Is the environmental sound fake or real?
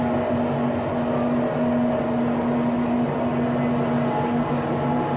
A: real